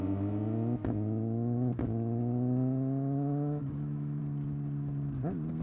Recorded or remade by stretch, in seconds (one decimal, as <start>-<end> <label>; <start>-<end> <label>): 0.0-0.8 recorded; 0.8-4.2 remade; 4.2-5.6 recorded